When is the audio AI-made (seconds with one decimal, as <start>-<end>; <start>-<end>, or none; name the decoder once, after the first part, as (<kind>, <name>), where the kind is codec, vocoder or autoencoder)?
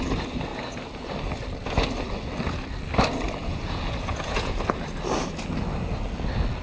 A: 0.5-1.1 (vocoder, Vocos); 3.4-4.6